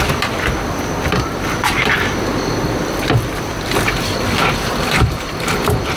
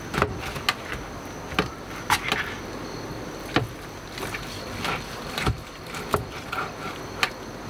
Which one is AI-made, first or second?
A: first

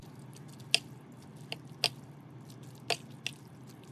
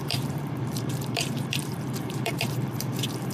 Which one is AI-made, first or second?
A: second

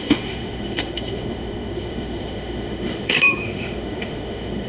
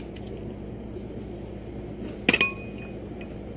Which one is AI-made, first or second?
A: first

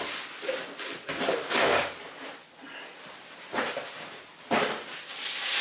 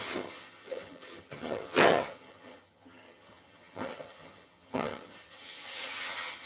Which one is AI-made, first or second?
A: second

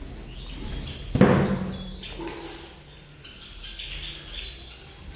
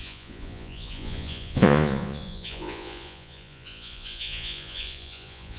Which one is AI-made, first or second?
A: second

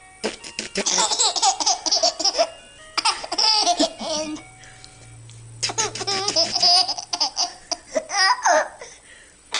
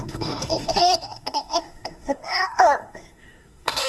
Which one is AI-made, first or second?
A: second